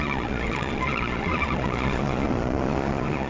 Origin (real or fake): fake